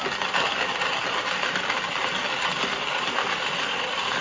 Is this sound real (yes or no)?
yes